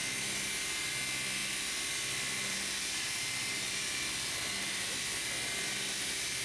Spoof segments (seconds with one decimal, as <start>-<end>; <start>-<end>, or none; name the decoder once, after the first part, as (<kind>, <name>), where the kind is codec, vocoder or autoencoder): 1.4-5.2 (vocoder, BigVGAN v2)